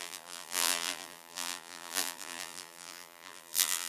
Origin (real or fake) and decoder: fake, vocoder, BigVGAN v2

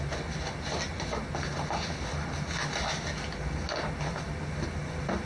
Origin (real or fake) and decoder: real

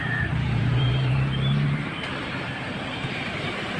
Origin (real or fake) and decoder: fake, vocoder, BigVGAN v2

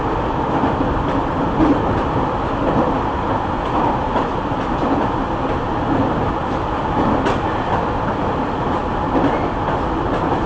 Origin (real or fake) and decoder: fake, vocoder, BigVGAN v2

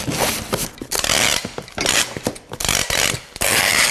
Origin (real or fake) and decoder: fake, vocoder, BigVGAN v2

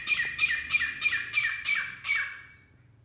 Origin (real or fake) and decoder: fake, vocoder, BigVGAN v2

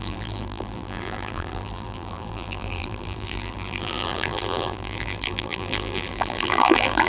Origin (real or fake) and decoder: fake, vocoder, BigVGAN v2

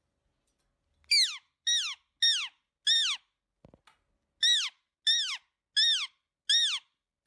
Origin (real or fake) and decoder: real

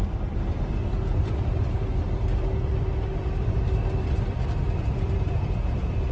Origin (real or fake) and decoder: fake, vocoder, BigVGAN v2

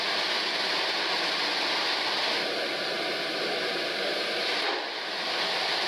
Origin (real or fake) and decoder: real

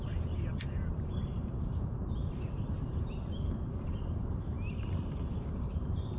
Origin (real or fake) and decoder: fake, vocoder, BigVGAN v2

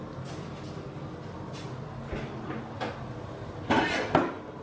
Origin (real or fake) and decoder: real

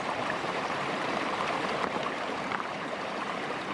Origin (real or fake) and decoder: fake, vocoder, BigVGAN v2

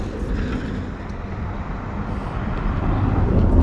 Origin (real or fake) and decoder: real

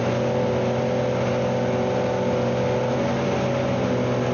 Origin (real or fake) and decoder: real